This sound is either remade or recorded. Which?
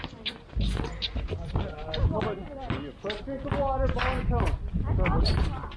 recorded